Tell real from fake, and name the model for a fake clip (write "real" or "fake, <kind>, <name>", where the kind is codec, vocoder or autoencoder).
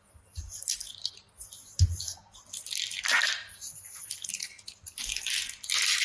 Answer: real